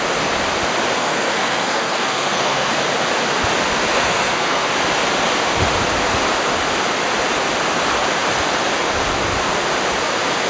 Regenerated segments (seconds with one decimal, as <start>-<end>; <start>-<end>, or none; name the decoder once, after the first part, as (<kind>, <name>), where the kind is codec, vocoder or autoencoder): 1.0-2.7 (codec, SNAC); 3.9-4.7